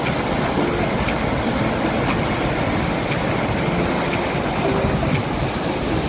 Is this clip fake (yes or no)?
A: no